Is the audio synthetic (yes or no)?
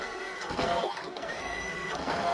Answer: yes